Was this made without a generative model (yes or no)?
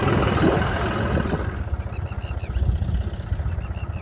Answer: yes